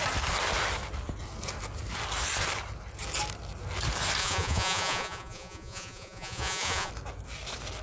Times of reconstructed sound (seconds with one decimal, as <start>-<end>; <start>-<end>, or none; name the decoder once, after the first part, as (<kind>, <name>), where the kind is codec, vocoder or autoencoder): 4.2-6.9 (vocoder, Vocos)